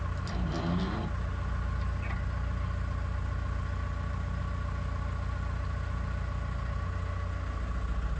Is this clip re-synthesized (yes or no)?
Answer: no